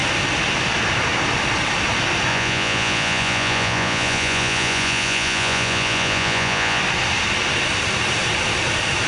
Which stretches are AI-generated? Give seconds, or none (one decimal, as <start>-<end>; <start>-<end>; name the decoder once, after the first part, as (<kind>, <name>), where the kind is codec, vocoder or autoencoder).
2.3-6.8 (vocoder, Vocos)